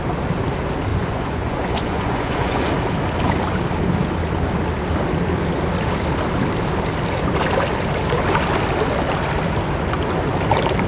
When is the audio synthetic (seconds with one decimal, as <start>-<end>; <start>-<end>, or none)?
0.9-2.7